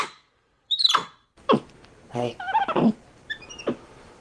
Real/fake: fake